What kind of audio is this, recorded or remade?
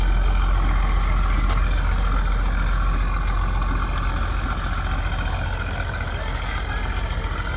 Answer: recorded